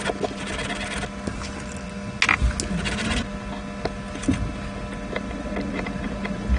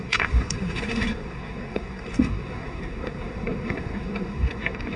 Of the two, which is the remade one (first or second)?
second